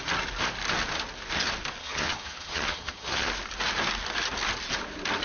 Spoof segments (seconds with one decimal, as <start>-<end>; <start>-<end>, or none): 1.8-3.3